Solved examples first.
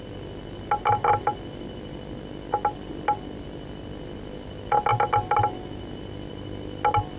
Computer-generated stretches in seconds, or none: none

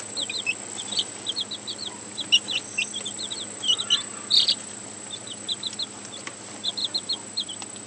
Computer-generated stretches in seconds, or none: none

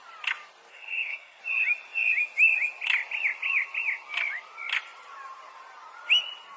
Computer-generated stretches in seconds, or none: 0.7-1.4

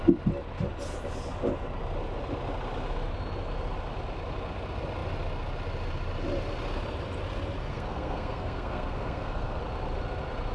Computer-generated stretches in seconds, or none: 7.7-9.6

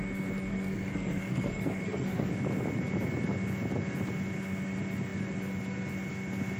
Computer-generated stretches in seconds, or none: 0.5-2.3